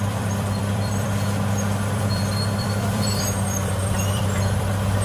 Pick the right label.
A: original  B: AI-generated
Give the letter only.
B